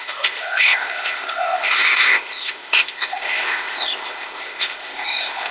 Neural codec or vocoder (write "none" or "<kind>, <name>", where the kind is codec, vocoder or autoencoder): codec, ZipCodec